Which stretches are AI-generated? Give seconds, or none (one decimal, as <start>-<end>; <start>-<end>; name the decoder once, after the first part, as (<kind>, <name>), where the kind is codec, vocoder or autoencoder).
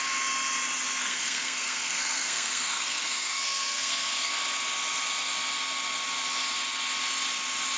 1.0-4.3 (codec, SNAC)